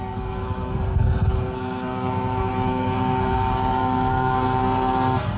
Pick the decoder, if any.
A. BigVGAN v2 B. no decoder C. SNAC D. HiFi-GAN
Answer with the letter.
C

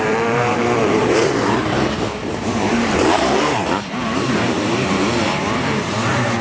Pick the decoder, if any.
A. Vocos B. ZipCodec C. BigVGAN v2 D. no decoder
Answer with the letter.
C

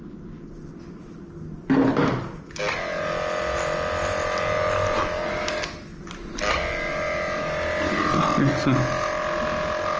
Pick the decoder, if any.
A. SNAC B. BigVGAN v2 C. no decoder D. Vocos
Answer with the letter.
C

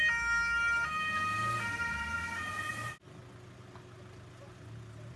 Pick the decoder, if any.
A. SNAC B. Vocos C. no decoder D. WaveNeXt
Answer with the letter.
C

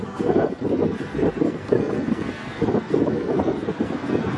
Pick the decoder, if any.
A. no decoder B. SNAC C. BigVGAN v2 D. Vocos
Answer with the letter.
B